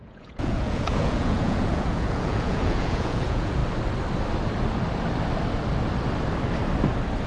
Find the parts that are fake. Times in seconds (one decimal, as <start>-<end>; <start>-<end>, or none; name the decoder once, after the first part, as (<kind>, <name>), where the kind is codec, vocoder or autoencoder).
0.0-3.6 (vocoder, Vocos)